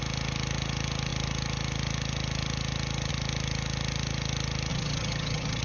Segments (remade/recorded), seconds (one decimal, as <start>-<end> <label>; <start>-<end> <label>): 0.0-4.7 recorded; 4.7-5.6 remade